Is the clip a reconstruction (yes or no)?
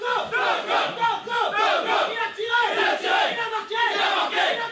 no